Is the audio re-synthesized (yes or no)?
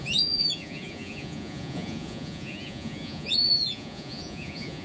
yes